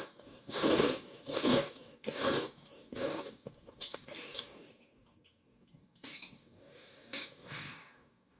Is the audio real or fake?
fake